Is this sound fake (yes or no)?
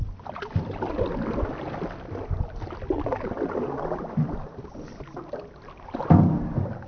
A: no